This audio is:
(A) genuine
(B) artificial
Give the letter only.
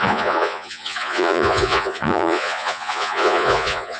B